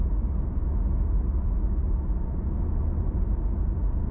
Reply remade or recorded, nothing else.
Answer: recorded